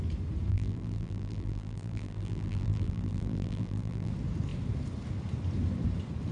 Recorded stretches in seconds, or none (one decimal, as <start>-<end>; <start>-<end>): 0.0-0.5; 4.1-6.3